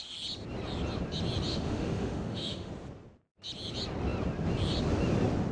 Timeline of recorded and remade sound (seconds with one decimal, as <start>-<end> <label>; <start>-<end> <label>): 0.0-1.5 recorded; 1.5-2.7 remade; 2.7-5.5 recorded